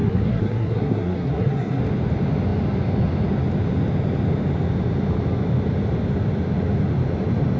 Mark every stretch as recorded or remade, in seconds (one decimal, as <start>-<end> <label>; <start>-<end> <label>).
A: 0.0-1.8 remade; 1.8-7.6 recorded